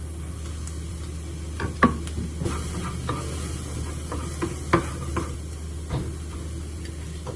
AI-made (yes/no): no